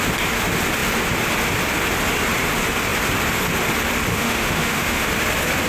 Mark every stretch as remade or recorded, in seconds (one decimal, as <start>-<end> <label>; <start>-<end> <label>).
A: 0.0-4.1 recorded; 4.1-5.1 remade; 5.1-5.7 recorded